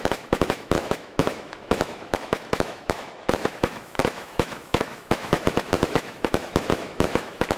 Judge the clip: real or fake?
fake